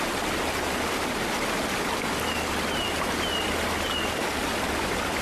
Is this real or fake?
real